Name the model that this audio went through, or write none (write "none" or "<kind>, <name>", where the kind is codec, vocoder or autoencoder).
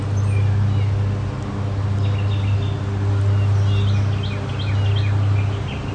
none